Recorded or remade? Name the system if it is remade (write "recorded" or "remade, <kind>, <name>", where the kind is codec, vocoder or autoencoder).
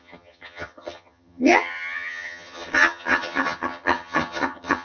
remade, vocoder, HiFi-GAN